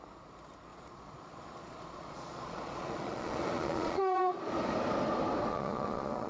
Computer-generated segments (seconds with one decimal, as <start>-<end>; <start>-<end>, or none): 0.7-4.5; 5.5-6.3